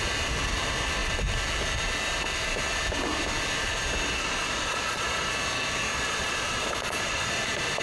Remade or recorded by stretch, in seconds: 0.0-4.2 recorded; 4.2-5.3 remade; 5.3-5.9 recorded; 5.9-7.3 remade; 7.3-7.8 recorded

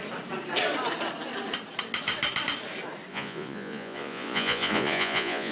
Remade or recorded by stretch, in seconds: 0.0-3.1 recorded; 3.1-5.5 remade

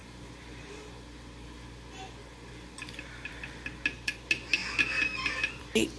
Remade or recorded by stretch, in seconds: 0.0-6.0 recorded

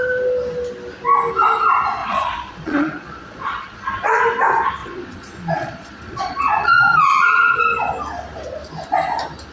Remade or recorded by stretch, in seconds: 0.0-2.0 recorded; 2.0-4.2 remade; 4.2-4.8 recorded; 4.8-7.6 remade; 7.6-9.5 recorded

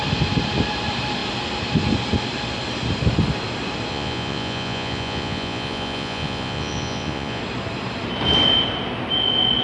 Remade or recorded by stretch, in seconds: 0.0-3.9 recorded; 3.9-7.4 remade; 7.4-9.6 recorded

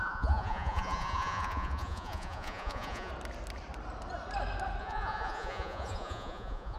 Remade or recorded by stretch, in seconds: 0.0-3.1 remade; 3.1-4.8 recorded; 4.8-6.8 remade

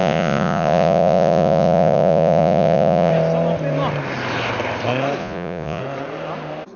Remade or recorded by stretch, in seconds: 0.0-3.1 remade; 3.1-5.2 recorded; 5.2-5.8 remade; 5.8-6.8 recorded